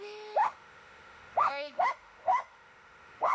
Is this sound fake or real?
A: fake